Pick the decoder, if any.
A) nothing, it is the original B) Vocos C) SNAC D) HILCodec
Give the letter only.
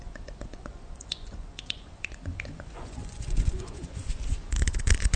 B